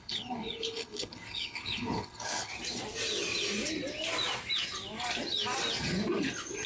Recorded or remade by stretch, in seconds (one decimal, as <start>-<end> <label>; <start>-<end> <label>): 0.0-2.5 remade; 2.5-6.7 recorded